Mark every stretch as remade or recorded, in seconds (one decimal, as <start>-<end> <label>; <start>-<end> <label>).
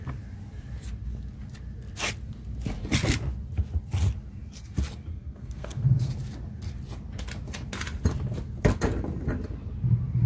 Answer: 0.0-5.1 recorded; 5.1-6.1 remade; 6.1-10.3 recorded